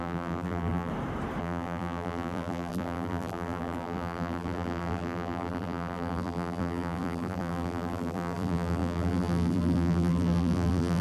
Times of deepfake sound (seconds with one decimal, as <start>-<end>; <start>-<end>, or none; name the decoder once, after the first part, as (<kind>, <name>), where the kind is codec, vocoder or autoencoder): 0.0-0.9 (vocoder, BigVGAN v2); 1.4-11.0